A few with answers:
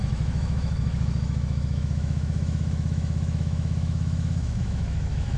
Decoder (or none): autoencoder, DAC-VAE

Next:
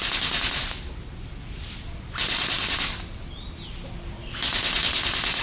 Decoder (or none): none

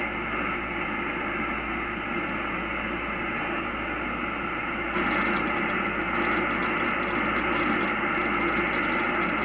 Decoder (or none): none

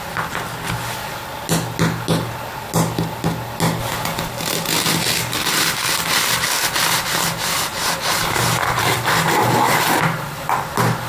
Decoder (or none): none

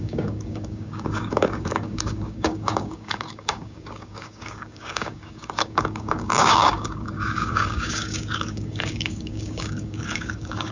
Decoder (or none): codec, DAC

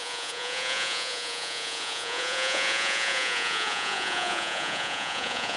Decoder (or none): vocoder, Vocos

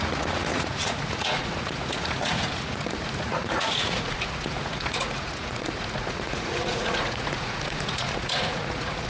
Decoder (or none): vocoder, Vocos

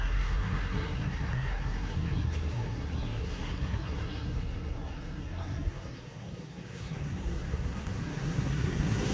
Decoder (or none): codec, SNAC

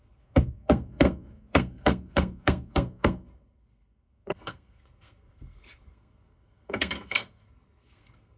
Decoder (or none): codec, SNAC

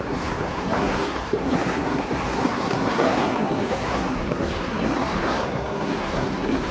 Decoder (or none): codec, SNAC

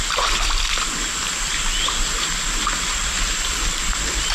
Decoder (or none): vocoder, BigVGAN v2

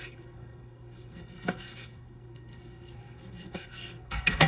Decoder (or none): codec, SNAC